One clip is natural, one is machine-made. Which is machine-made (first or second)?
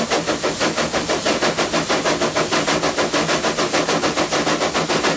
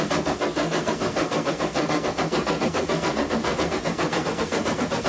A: second